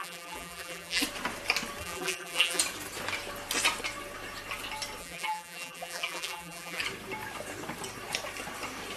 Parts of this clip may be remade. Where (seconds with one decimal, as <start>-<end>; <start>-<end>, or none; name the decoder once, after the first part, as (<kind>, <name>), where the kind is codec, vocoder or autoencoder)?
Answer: 0.0-1.0 (vocoder, BigVGAN v2); 1.8-2.6; 5.0-6.8